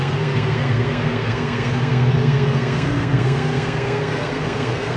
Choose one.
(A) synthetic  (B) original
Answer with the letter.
A